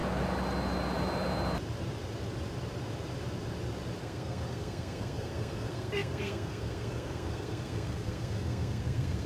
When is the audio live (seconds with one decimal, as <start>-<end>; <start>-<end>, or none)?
0.0-4.0